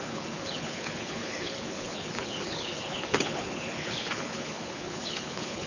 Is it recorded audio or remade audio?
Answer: remade